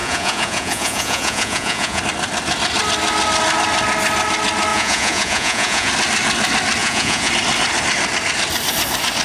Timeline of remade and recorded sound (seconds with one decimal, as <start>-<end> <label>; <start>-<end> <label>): 0.0-2.0 remade; 2.0-4.7 recorded; 4.7-5.9 remade; 5.9-6.8 recorded; 6.8-7.3 remade; 7.3-9.2 recorded